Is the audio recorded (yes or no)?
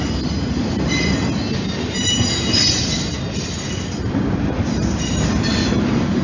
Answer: yes